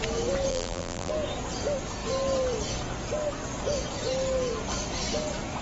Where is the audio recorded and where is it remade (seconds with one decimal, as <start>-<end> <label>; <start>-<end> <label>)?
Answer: 0.0-0.5 recorded; 0.5-1.1 remade; 1.1-5.6 recorded